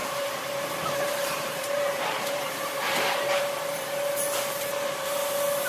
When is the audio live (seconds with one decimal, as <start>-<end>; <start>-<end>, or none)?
3.4-5.7